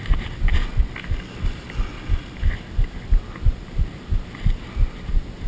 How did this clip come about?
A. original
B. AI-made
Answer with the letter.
A